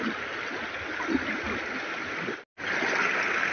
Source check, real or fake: real